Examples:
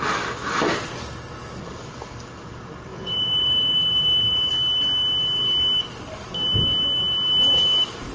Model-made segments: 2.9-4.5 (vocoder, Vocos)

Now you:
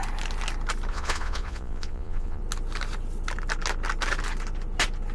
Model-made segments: 0.9-2.4 (vocoder, Vocos)

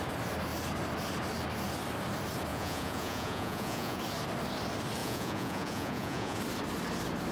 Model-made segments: 2.5-4.0 (vocoder, Vocos); 5.0-6.4

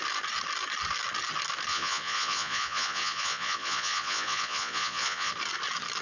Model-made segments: 1.7-5.3 (vocoder, Vocos)

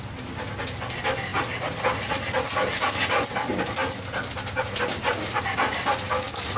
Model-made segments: none

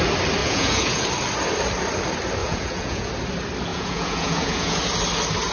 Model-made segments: 0.4-1.0 (vocoder, Vocos); 2.4-3.1; 3.7-4.8

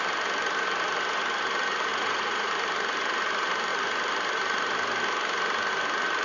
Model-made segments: 1.9-2.5 (vocoder, Vocos)